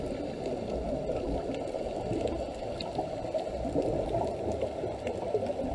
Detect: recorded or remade recorded